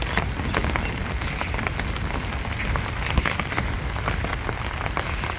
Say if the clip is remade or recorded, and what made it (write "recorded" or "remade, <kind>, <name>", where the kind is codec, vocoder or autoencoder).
recorded